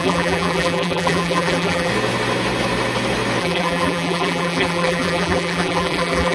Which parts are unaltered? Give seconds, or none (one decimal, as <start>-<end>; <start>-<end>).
1.9-3.4